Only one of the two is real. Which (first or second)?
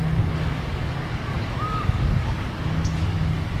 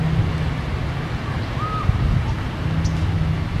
second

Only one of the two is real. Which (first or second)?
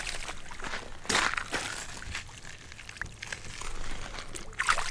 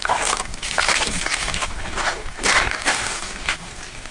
first